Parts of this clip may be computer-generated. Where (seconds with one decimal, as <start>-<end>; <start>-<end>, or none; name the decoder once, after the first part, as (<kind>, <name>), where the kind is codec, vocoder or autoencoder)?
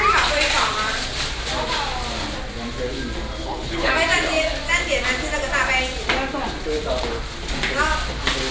3.4-3.9 (codec, HILCodec)